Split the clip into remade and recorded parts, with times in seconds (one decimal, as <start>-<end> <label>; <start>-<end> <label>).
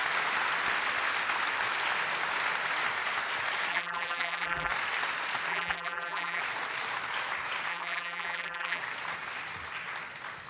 0.0-3.7 recorded; 3.7-4.7 remade; 4.7-5.5 recorded; 5.5-6.4 remade; 6.4-7.7 recorded; 7.7-8.8 remade; 8.8-10.5 recorded